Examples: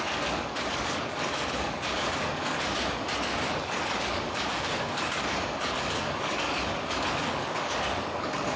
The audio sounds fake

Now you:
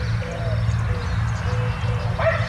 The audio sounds real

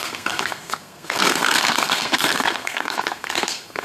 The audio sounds fake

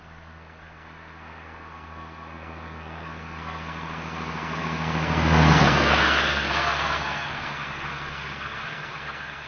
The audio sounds fake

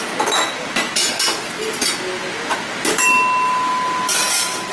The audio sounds real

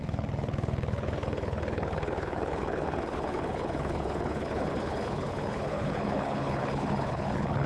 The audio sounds fake